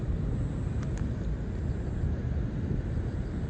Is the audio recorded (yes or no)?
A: yes